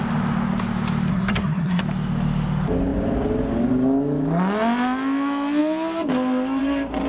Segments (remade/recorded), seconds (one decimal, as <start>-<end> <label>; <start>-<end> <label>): 0.0-1.1 recorded; 1.1-1.8 remade; 1.8-7.1 recorded